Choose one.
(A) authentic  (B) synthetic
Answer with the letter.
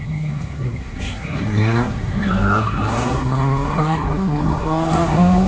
B